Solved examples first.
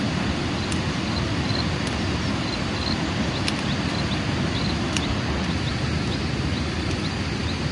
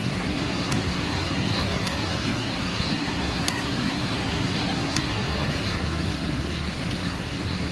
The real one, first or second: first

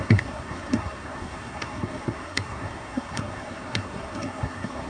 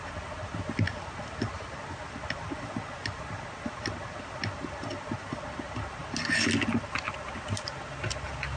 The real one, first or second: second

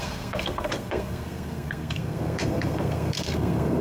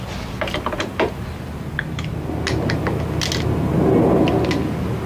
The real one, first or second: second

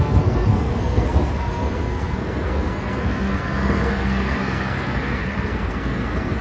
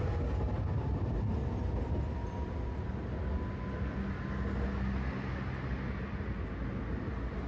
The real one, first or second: second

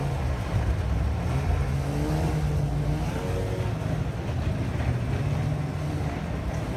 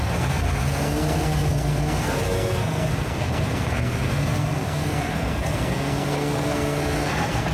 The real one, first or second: first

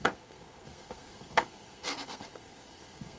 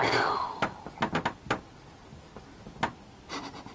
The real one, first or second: second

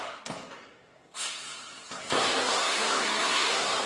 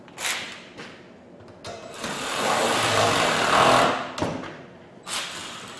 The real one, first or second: second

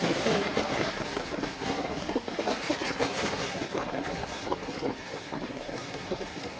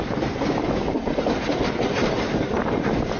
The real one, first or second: second